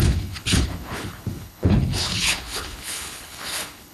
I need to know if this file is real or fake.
fake